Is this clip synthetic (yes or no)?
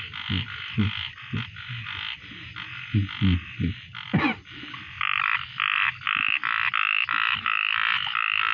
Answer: no